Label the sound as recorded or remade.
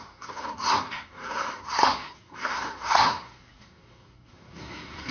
remade